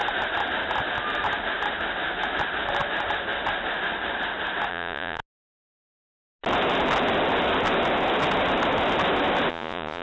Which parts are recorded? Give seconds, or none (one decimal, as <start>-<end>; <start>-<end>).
0.0-4.7; 5.2-9.5